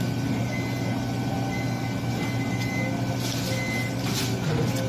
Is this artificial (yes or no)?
no